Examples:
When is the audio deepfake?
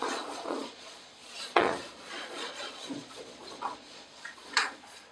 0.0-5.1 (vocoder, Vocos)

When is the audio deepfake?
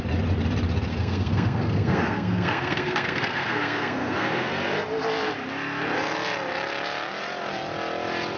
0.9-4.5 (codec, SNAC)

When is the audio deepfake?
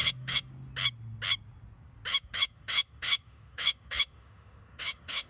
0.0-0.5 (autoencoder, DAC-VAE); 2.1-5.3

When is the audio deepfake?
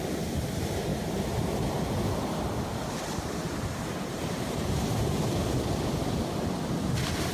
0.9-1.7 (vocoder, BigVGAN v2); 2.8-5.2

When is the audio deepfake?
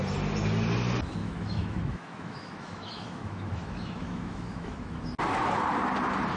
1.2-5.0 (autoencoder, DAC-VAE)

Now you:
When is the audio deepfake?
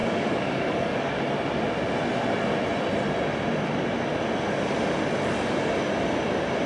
0.0-1.3 (codec, DAC)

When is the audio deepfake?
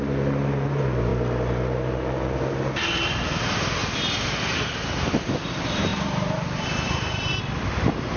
3.8-5.4 (vocoder, BigVGAN v2); 5.9-7.4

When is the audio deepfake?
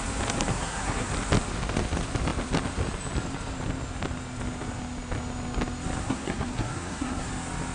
0.5-1.1 (codec, SNAC); 6.0-7.3